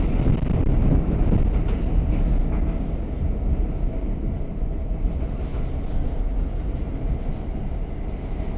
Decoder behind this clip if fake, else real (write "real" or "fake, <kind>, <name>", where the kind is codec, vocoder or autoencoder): real